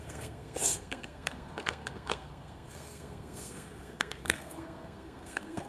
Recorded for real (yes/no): no